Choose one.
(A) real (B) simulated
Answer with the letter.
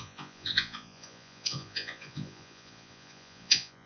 B